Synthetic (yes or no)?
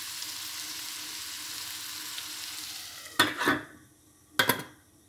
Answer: no